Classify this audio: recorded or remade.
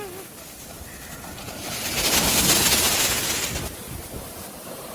recorded